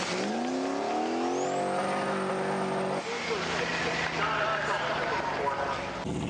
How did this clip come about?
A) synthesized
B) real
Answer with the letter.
B